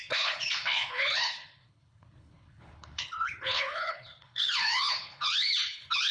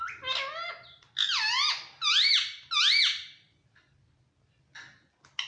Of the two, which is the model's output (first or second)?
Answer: first